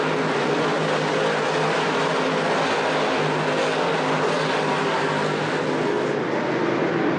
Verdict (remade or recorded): recorded